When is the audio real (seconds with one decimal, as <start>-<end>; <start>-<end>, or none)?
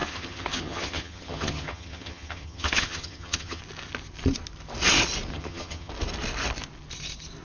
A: 3.6-5.3; 5.9-7.4